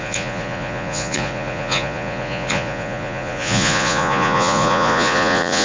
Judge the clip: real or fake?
fake